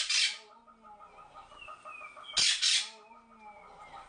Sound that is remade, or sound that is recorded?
recorded